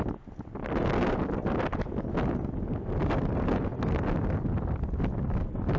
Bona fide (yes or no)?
yes